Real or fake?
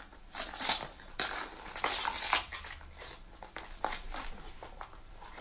real